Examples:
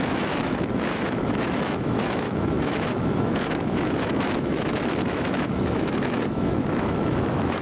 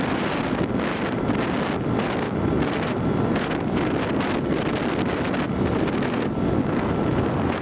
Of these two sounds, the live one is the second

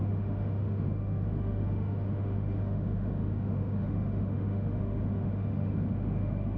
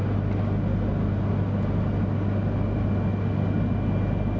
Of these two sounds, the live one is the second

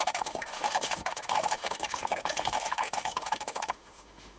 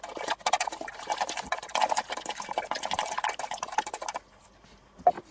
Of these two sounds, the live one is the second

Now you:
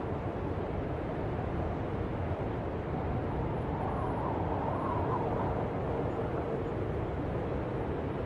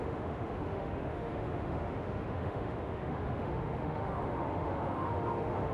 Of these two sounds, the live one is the first